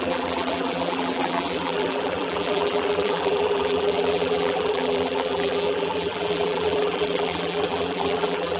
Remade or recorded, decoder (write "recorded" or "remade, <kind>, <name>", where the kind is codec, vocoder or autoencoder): remade, vocoder, BigVGAN v2